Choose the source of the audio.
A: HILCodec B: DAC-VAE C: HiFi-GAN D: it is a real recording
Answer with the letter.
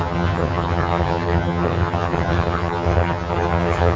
C